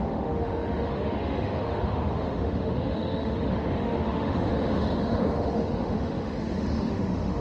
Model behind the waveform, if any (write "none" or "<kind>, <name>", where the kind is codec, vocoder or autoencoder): autoencoder, DAC-VAE